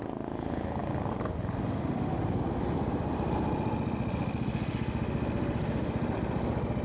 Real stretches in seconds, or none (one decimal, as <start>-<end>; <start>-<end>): 0.0-6.8